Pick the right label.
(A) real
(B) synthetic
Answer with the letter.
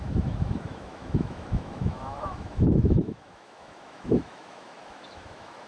B